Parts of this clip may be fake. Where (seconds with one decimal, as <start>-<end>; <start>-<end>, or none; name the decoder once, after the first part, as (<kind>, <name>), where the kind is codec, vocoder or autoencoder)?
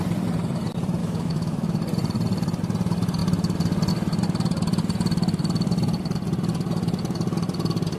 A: 1.0-1.8 (autoencoder, DAC-VAE)